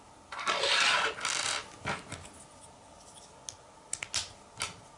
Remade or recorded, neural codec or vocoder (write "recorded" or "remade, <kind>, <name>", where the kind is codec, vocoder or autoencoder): recorded